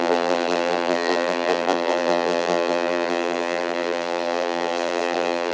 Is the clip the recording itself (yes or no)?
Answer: no